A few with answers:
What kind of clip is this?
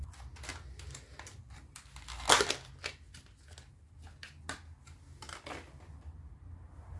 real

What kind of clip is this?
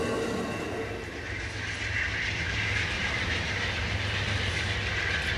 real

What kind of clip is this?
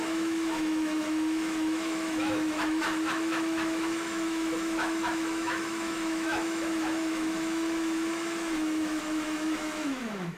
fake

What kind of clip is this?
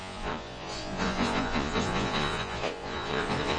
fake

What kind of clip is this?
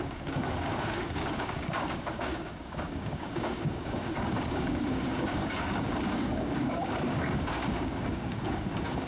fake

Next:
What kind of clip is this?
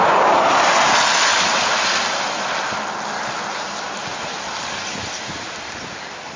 real